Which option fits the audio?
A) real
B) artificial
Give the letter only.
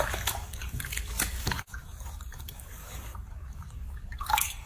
B